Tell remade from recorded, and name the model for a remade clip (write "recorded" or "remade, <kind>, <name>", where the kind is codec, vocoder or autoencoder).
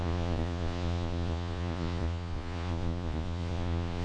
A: remade, vocoder, Vocos